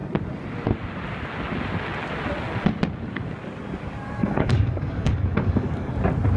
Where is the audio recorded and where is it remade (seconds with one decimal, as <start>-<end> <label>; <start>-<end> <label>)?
0.0-4.2 recorded; 4.2-5.9 remade; 5.9-6.4 recorded